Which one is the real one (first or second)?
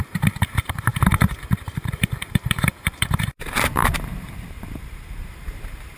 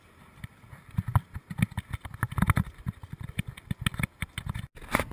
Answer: second